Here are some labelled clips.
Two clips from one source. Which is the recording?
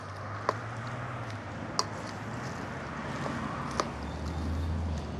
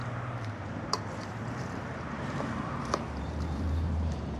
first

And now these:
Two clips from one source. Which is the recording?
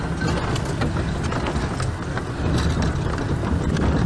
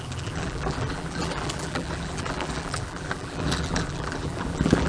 first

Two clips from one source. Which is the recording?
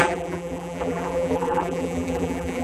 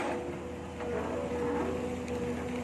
second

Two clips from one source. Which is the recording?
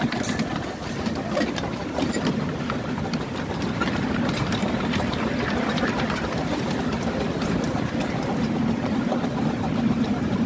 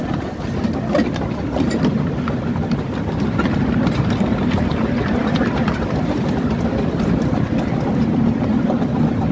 second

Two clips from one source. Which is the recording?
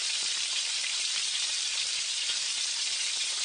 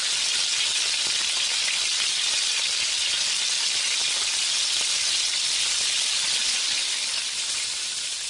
second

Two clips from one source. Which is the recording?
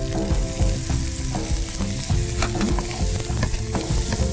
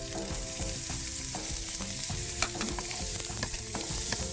first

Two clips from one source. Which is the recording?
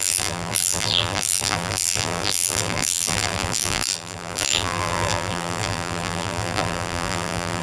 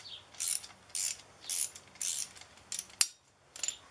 second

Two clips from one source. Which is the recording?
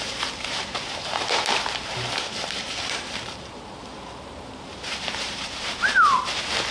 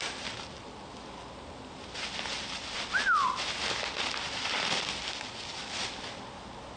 second